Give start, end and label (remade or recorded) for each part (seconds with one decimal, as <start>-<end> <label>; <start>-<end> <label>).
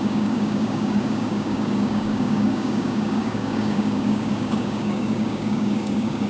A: 0.0-6.3 remade